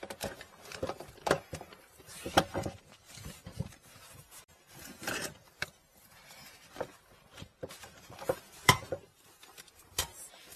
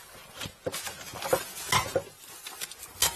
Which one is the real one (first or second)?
second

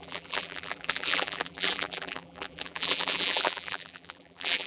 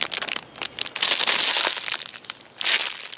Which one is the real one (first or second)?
second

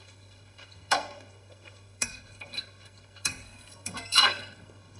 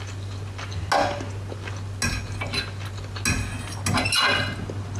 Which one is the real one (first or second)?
second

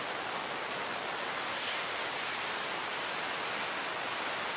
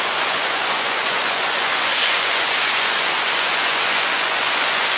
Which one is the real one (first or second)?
first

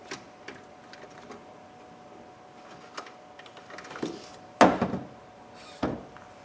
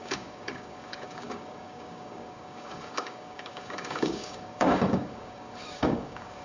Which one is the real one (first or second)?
first